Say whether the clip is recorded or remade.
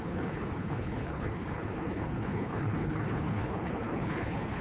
remade